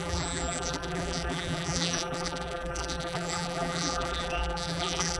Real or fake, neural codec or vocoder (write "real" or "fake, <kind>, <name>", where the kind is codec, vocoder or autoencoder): fake, vocoder, BigVGAN v2